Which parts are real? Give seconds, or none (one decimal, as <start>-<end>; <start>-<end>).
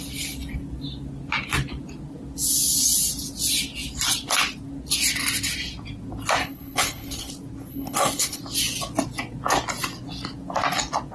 0.0-6.4; 7.3-7.7; 8.4-11.1